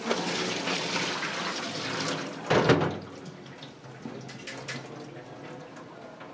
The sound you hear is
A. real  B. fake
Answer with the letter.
A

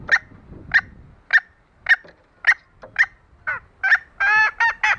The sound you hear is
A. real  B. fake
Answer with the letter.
A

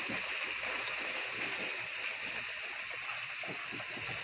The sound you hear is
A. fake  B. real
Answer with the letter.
B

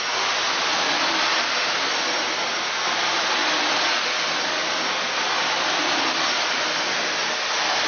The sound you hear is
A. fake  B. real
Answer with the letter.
B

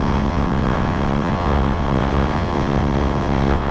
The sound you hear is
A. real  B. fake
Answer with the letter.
B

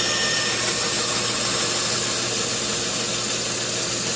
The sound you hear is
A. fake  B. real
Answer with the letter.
B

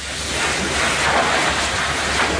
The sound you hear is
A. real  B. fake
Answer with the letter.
A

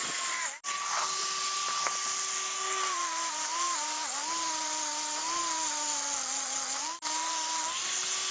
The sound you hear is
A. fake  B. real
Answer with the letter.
B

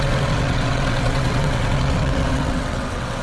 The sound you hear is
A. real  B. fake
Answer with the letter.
B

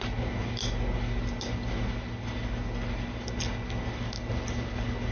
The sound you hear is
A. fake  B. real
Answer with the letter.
B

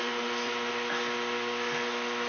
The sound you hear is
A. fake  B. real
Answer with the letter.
B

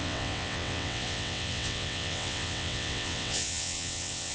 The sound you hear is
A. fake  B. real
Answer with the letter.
A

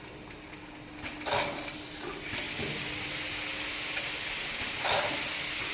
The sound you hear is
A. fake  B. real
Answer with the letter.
B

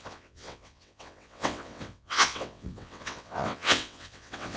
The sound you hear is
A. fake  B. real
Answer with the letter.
A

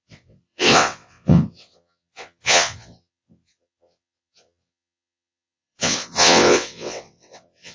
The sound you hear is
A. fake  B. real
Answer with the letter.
A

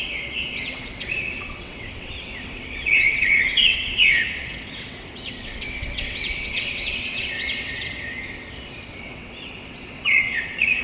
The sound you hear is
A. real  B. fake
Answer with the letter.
B